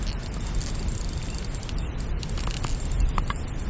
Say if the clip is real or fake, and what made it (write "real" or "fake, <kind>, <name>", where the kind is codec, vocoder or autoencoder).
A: real